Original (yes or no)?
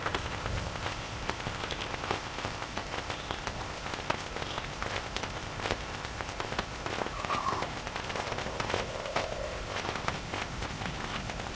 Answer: no